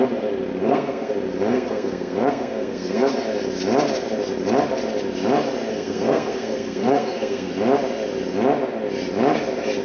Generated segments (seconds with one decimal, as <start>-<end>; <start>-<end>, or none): 0.6-1.1; 1.5-3.1; 5.7-7.5